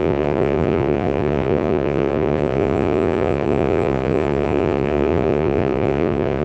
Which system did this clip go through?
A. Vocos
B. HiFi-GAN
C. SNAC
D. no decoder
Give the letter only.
A